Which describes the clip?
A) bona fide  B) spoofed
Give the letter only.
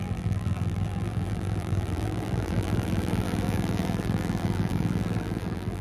B